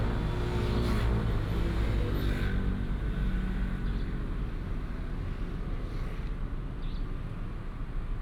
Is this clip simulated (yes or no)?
no